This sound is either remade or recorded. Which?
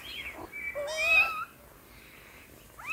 recorded